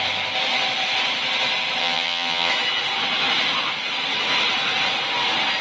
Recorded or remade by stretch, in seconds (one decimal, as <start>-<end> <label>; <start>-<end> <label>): 0.0-1.8 recorded; 1.8-2.5 remade; 2.5-5.6 recorded